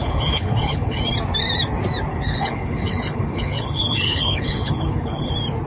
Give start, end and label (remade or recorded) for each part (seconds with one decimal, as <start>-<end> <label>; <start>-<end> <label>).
0.0-1.0 remade; 1.0-2.1 recorded; 2.1-5.3 remade; 5.3-5.7 recorded